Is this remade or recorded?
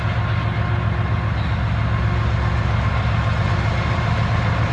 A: recorded